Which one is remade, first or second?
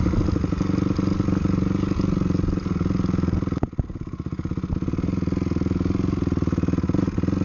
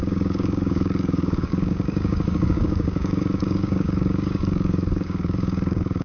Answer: second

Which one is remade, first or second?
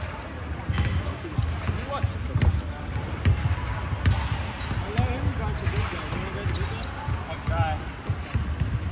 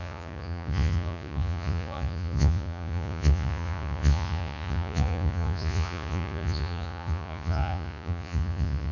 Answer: second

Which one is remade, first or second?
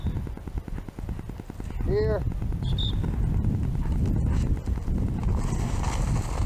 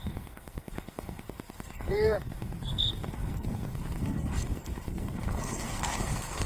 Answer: second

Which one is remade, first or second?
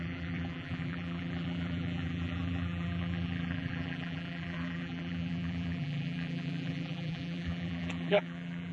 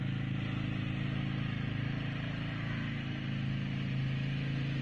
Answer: first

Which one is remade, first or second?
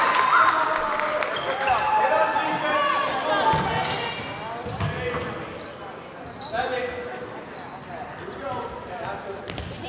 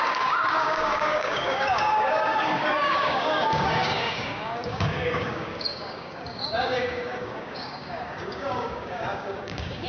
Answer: second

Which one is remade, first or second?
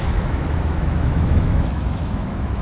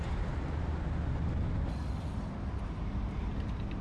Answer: first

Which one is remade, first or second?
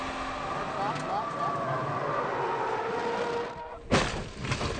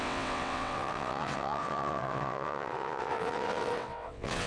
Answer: second